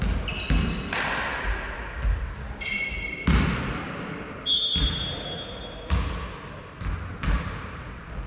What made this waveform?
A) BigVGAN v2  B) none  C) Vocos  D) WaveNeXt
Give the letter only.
B